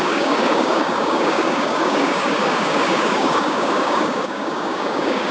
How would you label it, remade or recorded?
remade